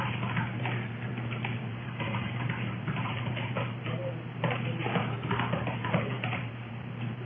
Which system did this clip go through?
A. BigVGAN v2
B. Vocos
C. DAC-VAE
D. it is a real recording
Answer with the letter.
A